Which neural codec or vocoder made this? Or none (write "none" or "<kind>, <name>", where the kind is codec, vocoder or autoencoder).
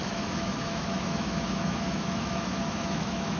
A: autoencoder, DAC-VAE